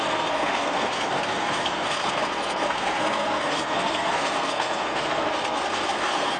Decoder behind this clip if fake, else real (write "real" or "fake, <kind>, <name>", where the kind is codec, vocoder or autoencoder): fake, codec, SNAC